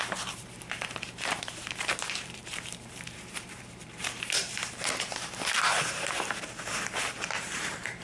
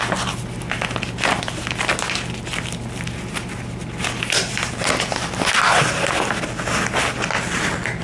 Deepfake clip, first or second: first